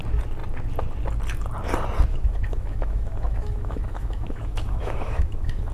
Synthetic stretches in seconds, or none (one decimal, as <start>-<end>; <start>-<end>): 2.1-5.7